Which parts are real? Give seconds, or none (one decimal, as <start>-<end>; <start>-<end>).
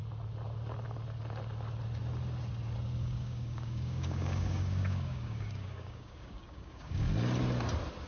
0.0-3.0; 7.1-8.1